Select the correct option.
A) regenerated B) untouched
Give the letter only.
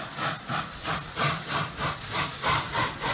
B